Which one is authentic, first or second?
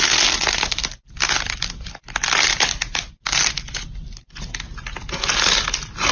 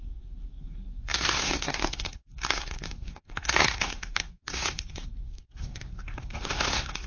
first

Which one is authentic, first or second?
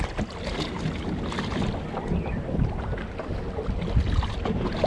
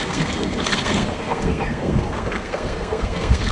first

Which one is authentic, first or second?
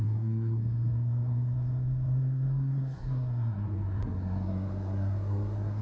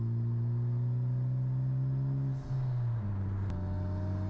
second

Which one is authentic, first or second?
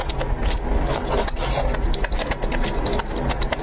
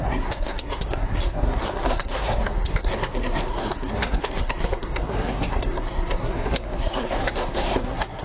first